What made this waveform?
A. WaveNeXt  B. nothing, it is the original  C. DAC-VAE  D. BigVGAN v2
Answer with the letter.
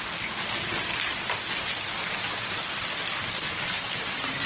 B